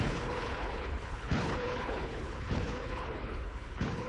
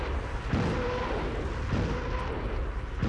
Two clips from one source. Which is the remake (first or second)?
first